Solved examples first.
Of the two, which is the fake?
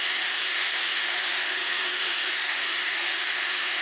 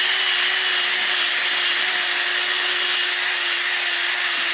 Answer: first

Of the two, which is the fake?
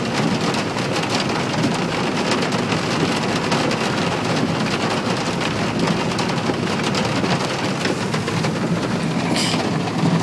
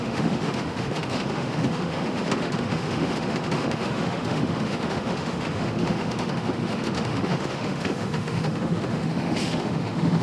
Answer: second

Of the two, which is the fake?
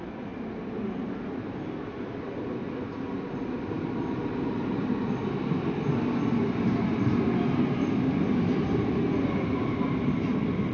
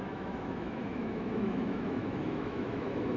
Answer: second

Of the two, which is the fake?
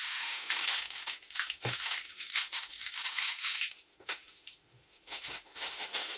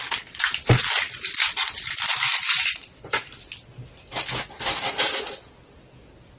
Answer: first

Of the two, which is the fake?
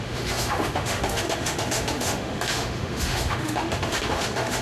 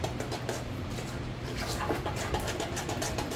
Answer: first